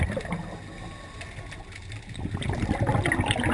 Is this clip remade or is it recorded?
recorded